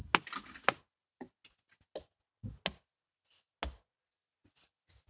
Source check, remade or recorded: recorded